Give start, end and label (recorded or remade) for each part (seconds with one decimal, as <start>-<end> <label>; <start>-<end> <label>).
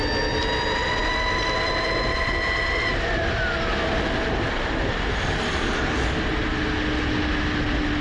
0.0-8.0 recorded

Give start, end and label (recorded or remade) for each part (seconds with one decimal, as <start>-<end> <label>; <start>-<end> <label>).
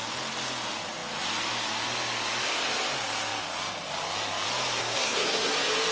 0.0-4.8 recorded; 4.8-5.5 remade; 5.5-5.9 recorded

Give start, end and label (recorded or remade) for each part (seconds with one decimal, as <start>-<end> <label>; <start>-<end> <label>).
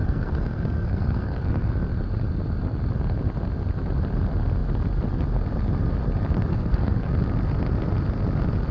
0.0-1.7 remade; 1.7-6.5 recorded; 6.5-7.1 remade; 7.1-8.7 recorded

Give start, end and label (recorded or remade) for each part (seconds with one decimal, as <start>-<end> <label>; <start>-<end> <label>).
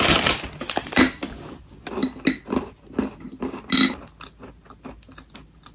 0.0-5.7 recorded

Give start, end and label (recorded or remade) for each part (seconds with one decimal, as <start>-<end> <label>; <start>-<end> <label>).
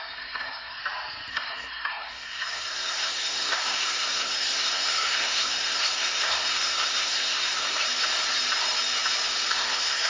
0.0-0.8 remade; 0.8-1.3 recorded; 1.3-7.8 remade; 7.8-9.5 recorded; 9.5-10.1 remade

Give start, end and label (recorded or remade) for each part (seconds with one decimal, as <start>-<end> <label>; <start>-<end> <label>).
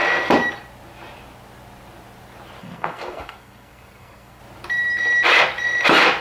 0.0-2.6 recorded; 2.6-4.4 remade; 4.4-6.2 recorded